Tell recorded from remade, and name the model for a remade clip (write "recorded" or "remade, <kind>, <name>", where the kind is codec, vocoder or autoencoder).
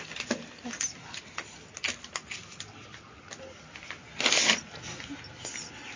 recorded